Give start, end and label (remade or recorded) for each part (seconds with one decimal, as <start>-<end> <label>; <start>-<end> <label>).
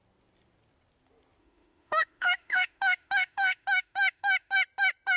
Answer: 0.0-1.4 recorded; 1.4-4.5 remade; 4.5-5.2 recorded